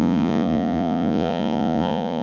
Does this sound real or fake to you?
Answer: fake